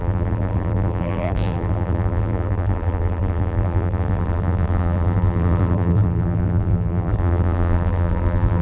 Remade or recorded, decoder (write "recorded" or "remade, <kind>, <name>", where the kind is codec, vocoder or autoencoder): remade, vocoder, BigVGAN v2